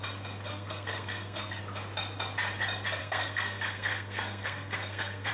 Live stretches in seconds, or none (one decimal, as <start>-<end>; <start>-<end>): 0.0-0.5; 1.6-3.0